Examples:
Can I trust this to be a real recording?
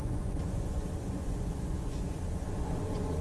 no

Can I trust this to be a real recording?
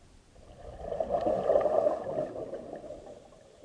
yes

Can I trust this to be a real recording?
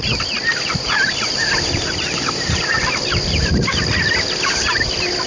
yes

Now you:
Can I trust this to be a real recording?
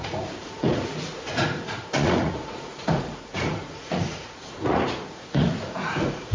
no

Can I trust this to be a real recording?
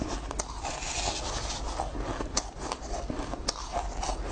yes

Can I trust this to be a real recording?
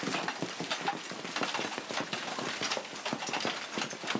yes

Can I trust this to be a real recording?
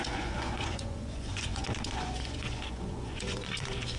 no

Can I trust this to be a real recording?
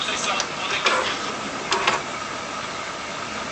yes